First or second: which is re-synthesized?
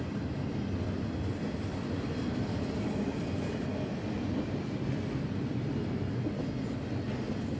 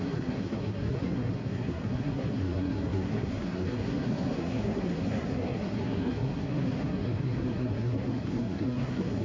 second